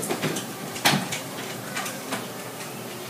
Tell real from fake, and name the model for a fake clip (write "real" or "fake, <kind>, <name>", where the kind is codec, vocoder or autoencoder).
fake, vocoder, BigVGAN v2